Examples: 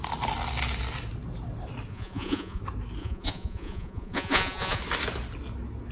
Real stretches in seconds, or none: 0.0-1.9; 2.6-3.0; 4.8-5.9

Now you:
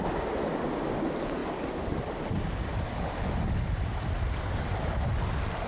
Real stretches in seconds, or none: 0.0-5.7

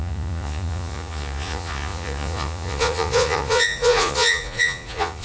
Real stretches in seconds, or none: none

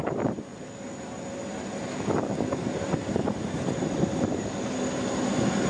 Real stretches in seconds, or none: 0.0-5.7

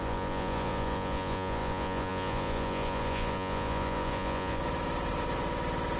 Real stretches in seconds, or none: 4.6-6.0